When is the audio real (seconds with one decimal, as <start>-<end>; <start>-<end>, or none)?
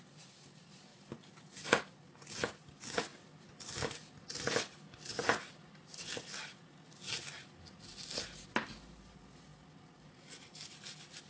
0.0-11.3